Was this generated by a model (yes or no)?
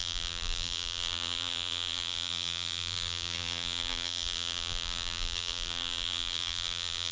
yes